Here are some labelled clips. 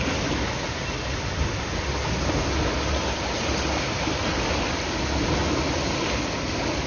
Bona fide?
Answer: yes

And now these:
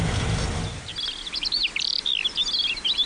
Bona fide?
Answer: yes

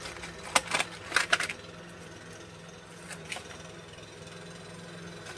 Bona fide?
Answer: yes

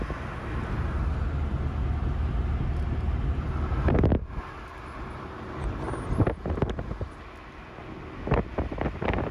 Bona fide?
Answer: yes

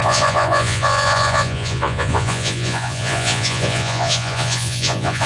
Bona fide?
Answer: no